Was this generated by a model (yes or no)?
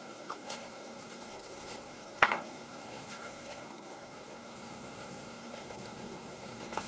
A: yes